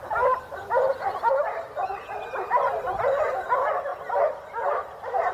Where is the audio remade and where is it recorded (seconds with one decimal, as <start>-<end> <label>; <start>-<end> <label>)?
0.0-5.3 recorded